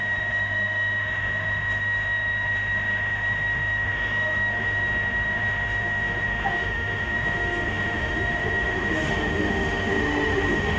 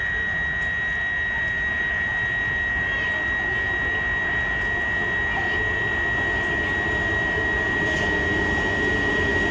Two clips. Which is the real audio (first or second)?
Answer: second